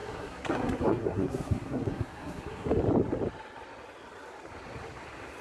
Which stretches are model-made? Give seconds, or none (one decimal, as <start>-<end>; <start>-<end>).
0.0-2.8